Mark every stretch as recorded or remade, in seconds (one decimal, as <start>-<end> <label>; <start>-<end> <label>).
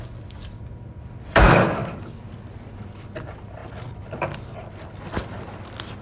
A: 0.0-6.0 recorded